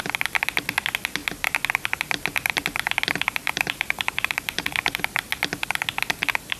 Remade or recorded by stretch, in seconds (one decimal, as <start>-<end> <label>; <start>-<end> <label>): 0.0-3.4 recorded; 3.4-5.0 remade; 5.0-6.6 recorded